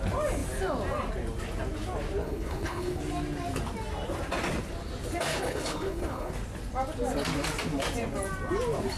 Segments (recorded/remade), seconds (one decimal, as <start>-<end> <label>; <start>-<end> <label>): 0.0-2.2 recorded; 2.2-3.0 remade; 3.0-5.3 recorded; 5.3-6.3 remade; 6.3-9.0 recorded